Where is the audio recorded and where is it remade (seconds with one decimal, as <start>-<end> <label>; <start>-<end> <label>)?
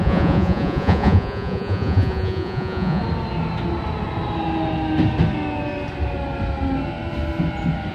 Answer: 0.0-3.0 remade; 3.0-7.9 recorded